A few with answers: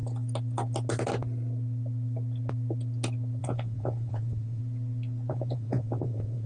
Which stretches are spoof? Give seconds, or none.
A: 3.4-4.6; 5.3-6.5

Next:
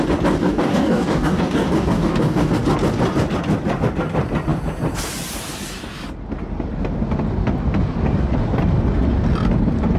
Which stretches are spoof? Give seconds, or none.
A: 0.4-2.5

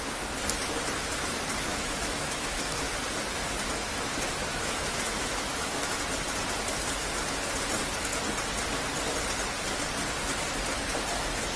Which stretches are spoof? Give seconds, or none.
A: 1.7-2.9; 4.5-6.0

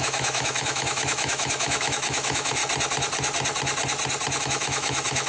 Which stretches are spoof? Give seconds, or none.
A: 0.0-2.6; 4.4-5.3

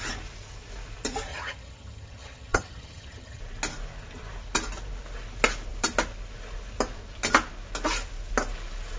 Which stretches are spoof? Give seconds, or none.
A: 1.3-3.4

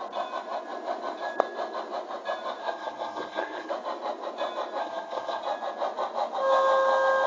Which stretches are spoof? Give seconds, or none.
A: 2.6-3.7; 4.8-5.4